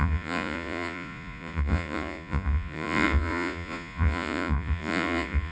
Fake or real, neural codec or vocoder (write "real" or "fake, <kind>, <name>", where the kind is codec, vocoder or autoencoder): fake, vocoder, Vocos